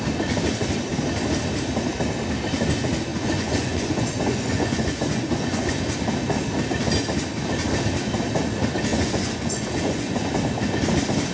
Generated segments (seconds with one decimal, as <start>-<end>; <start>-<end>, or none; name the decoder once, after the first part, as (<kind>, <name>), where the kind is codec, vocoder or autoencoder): 3.1-5.8 (vocoder, Vocos); 8.9-10.3